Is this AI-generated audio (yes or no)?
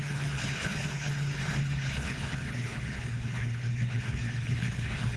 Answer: yes